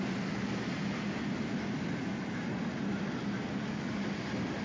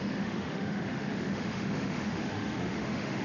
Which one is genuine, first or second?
first